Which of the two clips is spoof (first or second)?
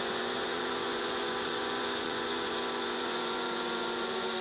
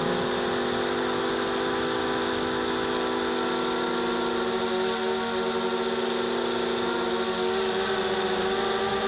first